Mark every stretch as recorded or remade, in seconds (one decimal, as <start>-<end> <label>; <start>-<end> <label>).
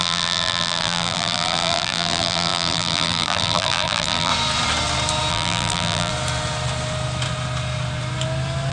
0.0-4.3 remade; 4.3-5.3 recorded; 5.3-6.1 remade; 6.1-8.7 recorded